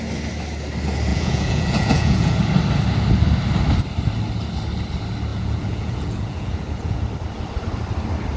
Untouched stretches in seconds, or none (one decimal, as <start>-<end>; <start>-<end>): 0.0-1.1; 2.4-5.3; 7.0-8.4